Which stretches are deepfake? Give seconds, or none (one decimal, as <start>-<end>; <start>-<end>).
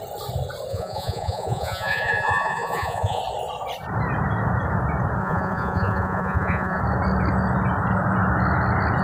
0.7-3.2; 5.2-6.8